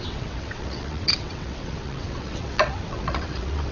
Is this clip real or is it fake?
fake